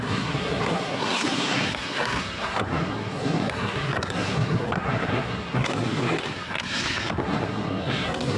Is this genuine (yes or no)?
no